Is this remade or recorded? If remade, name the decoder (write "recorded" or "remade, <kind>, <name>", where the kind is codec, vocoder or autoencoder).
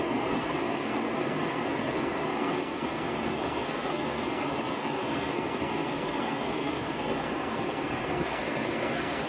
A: remade, codec, SNAC